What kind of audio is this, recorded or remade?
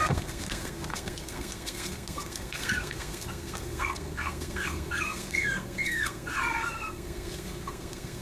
remade